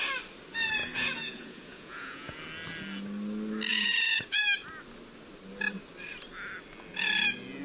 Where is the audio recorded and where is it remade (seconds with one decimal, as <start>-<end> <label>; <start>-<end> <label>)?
0.0-0.8 recorded; 0.8-2.4 remade; 2.4-3.7 recorded; 3.7-4.4 remade; 4.4-7.6 recorded